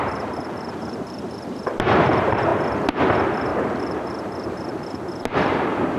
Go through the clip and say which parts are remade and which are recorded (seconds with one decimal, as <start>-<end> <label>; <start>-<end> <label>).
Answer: 0.0-2.5 remade; 2.5-3.1 recorded; 3.1-6.0 remade